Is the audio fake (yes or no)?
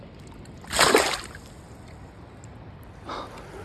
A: no